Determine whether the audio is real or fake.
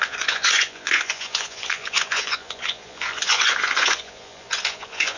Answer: fake